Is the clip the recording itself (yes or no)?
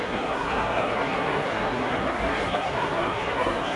no